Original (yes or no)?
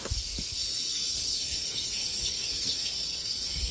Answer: no